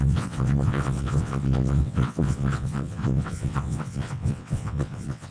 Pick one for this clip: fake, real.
fake